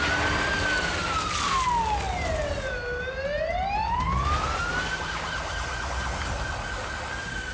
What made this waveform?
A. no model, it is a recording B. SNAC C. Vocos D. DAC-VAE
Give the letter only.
A